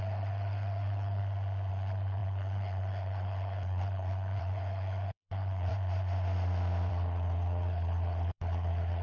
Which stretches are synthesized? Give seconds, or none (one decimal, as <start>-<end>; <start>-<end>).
0.0-1.2; 1.7-5.7; 6.9-9.0